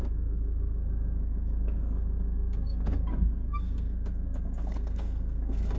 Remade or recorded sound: remade